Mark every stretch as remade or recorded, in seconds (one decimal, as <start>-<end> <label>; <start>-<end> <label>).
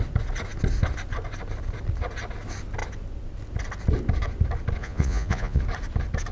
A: 0.0-4.8 recorded; 4.8-5.6 remade; 5.6-6.3 recorded